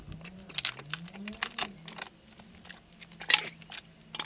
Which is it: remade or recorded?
recorded